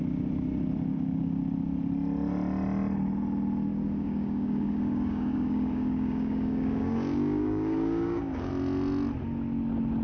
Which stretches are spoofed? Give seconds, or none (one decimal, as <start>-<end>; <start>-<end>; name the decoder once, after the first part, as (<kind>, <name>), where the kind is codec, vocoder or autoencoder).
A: 0.9-1.4 (codec, DAC); 3.7-8.5